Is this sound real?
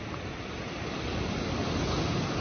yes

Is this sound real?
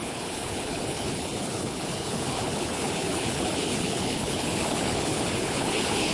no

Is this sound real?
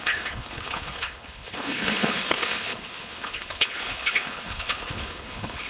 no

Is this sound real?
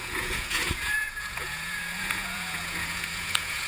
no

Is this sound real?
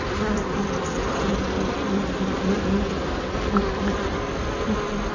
yes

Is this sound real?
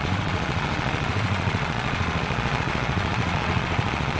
no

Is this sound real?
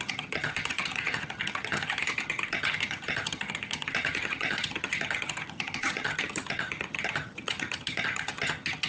no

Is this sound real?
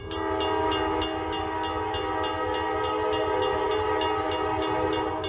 yes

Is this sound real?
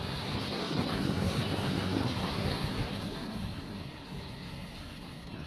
no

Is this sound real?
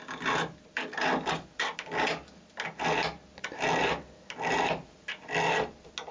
yes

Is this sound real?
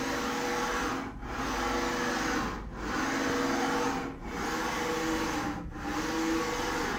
yes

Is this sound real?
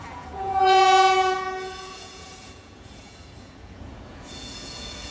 no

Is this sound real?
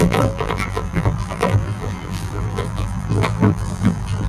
no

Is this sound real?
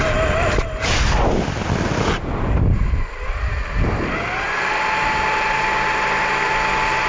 yes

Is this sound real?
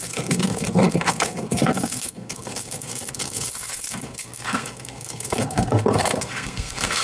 no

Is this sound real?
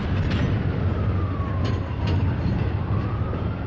yes